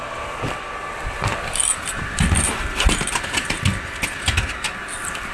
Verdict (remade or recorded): recorded